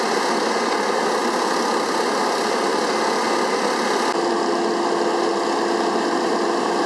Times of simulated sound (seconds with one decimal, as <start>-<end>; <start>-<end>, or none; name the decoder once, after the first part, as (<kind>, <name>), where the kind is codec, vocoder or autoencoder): none